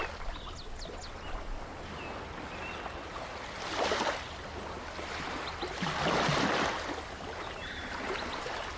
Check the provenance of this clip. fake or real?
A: real